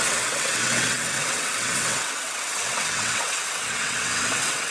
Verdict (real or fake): fake